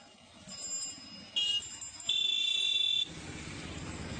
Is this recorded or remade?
recorded